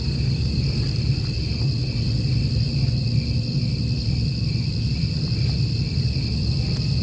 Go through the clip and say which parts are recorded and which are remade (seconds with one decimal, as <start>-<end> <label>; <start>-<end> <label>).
0.0-7.0 recorded